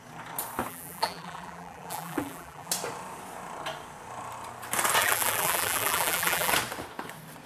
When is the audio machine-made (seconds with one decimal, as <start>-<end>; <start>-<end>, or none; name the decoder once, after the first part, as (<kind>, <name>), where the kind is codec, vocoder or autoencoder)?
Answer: 0.7-2.7 (vocoder, BigVGAN v2); 5.0-6.5